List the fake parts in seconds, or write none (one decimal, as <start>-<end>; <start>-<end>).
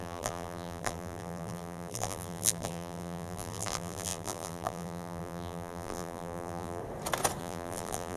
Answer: 0.0-6.8; 7.4-8.2